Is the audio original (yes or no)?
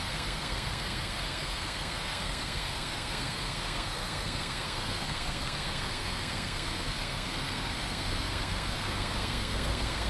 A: no